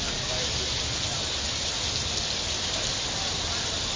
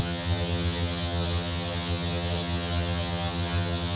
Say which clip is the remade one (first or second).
second